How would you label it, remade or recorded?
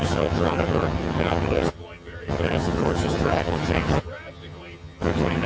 remade